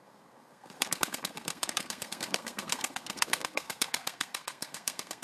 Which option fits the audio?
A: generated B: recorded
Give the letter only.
A